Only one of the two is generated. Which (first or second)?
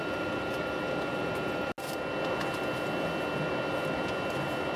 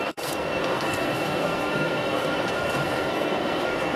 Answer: second